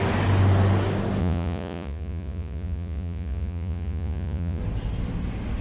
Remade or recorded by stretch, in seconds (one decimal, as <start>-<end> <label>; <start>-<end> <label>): 0.0-1.2 recorded; 1.2-4.6 remade; 4.6-5.6 recorded